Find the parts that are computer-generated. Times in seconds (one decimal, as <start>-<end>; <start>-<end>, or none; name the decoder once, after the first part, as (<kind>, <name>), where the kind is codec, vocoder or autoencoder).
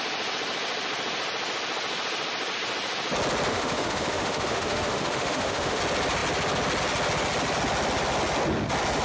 3.5-5.8 (autoencoder, DAC-VAE)